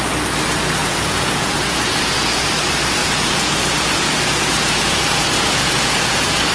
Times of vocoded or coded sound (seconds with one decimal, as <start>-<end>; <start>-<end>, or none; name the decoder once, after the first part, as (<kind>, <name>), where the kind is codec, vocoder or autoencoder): 0.8-2.4 (vocoder, Vocos); 3.0-6.5